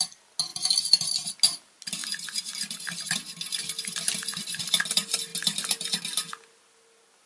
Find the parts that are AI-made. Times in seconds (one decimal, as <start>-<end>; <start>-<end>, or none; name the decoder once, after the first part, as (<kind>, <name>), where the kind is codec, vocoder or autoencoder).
0.5-1.3 (vocoder, BigVGAN v2); 2.0-3.1; 3.6-4.4

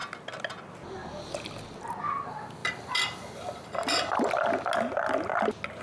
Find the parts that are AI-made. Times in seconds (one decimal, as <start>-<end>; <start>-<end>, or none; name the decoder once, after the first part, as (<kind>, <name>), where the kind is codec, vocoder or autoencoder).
2.6-3.8 (vocoder, BigVGAN v2)

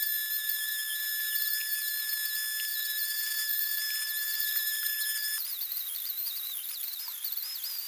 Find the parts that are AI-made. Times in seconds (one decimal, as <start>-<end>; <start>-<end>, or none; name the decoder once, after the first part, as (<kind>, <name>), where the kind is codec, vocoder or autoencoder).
2.7-7.0 (vocoder, BigVGAN v2)

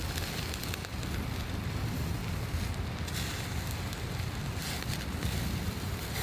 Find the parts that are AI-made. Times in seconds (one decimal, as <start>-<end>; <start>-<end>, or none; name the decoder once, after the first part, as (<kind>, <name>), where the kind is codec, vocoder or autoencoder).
0.0-2.2 (vocoder, BigVGAN v2); 4.6-6.2

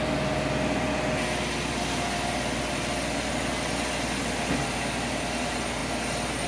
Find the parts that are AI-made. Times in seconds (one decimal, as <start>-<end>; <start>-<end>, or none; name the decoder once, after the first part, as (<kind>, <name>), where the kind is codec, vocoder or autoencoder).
none

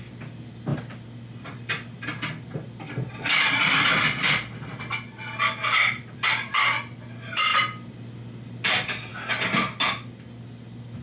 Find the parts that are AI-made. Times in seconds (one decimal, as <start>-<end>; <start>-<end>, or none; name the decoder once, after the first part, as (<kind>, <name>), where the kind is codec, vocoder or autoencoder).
none

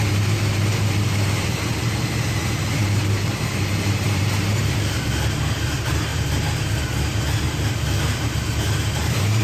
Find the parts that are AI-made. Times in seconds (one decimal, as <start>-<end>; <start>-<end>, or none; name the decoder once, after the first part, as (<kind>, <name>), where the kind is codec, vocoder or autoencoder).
2.8-4.6 (vocoder, BigVGAN v2); 6.1-6.6

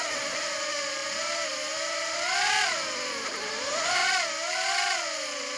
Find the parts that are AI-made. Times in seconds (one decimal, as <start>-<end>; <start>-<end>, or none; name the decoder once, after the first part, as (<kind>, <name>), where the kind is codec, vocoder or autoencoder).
0.0-4.0 (vocoder, BigVGAN v2)